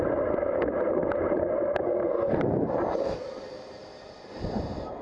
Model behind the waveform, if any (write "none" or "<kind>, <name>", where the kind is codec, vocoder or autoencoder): none